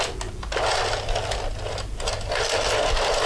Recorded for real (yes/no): yes